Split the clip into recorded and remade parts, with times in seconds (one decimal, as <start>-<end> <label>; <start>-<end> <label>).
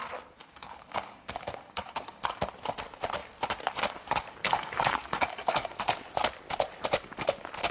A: 0.0-0.4 recorded; 0.4-2.4 remade; 2.4-4.4 recorded; 4.4-5.7 remade; 5.7-7.7 recorded